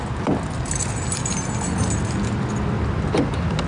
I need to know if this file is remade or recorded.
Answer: recorded